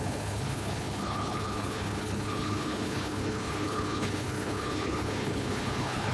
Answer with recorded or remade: remade